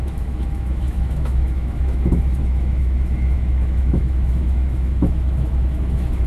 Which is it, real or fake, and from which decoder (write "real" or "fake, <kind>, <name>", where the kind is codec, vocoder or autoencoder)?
fake, autoencoder, DAC-VAE